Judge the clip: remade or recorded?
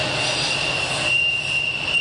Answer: remade